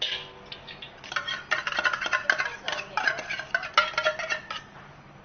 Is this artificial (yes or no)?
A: no